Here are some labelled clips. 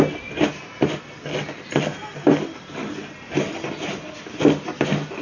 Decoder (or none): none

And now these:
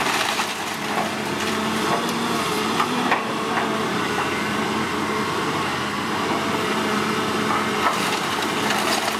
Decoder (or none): vocoder, BigVGAN v2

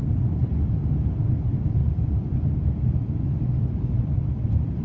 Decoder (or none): none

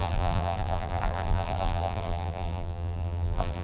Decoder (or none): vocoder, BigVGAN v2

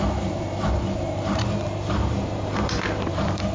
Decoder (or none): vocoder, BigVGAN v2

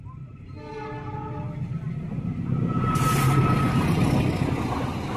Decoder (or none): none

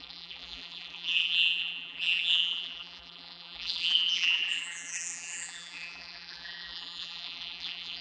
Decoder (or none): vocoder, BigVGAN v2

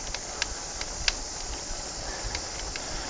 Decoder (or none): none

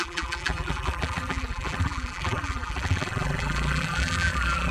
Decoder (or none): vocoder, BigVGAN v2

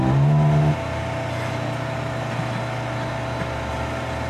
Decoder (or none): none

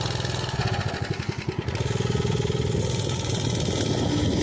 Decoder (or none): none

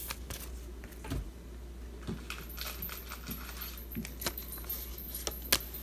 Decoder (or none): none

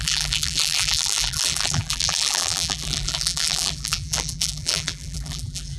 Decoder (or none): vocoder, BigVGAN v2